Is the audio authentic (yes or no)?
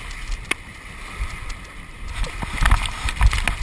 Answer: yes